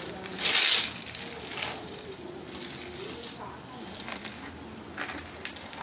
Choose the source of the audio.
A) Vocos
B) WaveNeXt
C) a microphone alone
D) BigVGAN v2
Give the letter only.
C